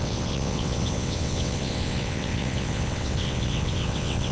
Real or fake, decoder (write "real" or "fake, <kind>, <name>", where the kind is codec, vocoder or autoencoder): fake, vocoder, WaveNeXt